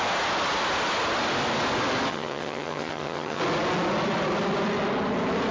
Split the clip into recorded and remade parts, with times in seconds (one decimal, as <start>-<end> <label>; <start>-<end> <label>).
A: 0.0-2.1 recorded; 2.1-3.4 remade; 3.4-5.5 recorded